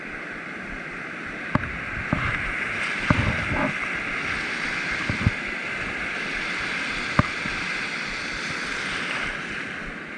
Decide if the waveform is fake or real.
real